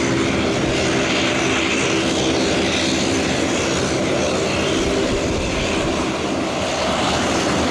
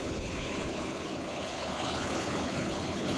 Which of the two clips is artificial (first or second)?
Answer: second